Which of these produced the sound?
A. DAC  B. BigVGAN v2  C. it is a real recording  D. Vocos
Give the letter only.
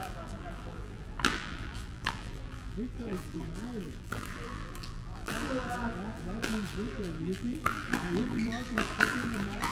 B